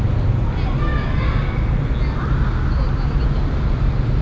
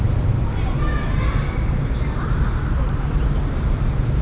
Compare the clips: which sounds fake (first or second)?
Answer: second